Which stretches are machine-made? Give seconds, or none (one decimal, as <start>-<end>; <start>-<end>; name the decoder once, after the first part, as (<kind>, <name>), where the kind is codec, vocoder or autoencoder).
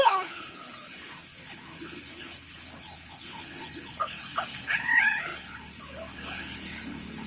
0.0-7.3 (codec, HILCodec)